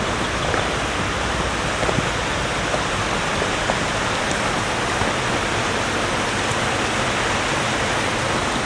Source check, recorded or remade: recorded